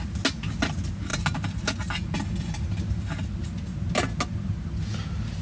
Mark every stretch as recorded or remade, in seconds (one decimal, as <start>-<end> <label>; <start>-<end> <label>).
0.0-5.4 recorded